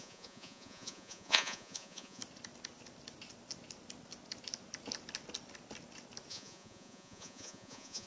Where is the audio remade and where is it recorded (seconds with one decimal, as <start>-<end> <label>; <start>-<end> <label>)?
0.0-2.2 remade; 2.2-6.3 recorded; 6.3-8.1 remade